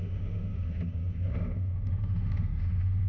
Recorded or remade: remade